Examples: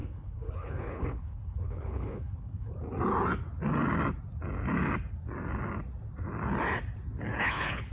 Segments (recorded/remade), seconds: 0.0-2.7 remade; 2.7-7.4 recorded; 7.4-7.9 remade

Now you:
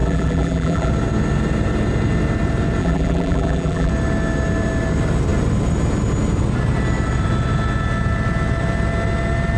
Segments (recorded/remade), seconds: 0.0-0.9 remade; 0.9-2.8 recorded; 2.8-3.9 remade; 3.9-9.6 recorded

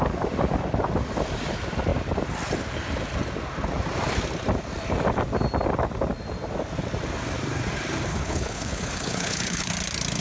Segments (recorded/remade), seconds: 0.0-8.1 recorded; 8.1-9.7 remade; 9.7-10.2 recorded